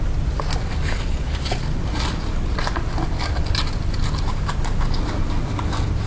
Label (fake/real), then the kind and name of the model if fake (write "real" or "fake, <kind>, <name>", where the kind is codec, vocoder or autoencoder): real